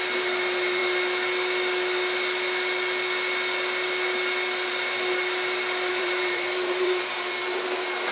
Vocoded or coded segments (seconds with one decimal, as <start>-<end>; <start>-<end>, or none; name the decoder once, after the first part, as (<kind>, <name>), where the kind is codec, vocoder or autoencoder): 5.9-7.4 (vocoder, BigVGAN v2)